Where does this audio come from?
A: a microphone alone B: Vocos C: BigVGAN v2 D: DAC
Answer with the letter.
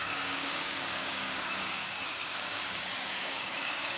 D